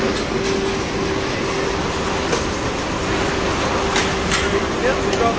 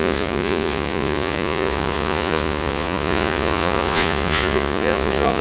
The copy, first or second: second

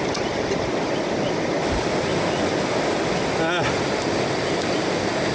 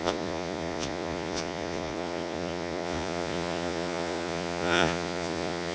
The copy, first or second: second